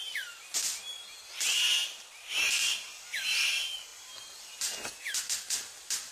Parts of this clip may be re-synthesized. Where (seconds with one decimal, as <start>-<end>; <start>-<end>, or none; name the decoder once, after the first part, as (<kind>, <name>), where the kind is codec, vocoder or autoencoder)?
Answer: none